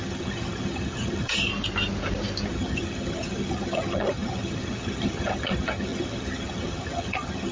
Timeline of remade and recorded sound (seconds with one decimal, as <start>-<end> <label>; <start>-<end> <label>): 0.0-1.5 remade; 1.5-2.5 recorded; 2.5-7.5 remade